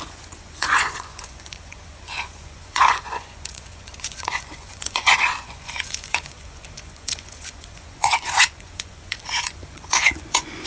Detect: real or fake fake